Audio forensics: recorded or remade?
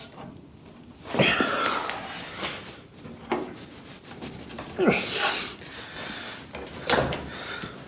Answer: recorded